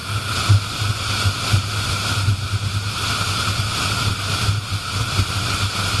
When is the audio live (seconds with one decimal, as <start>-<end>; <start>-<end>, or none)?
0.0-6.0